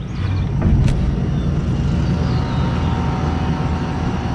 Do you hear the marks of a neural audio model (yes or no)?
no